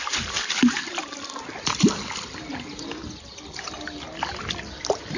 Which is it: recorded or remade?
remade